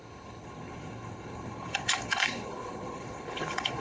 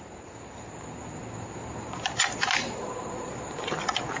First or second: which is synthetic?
first